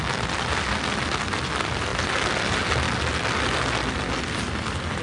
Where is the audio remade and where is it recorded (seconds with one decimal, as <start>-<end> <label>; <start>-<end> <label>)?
0.0-5.0 recorded